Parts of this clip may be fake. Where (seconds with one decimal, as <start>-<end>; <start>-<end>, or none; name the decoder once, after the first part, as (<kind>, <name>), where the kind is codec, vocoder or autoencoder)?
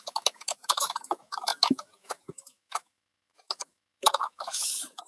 0.0-5.1 (autoencoder, DAC-VAE)